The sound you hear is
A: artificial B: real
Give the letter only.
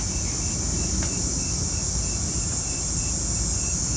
B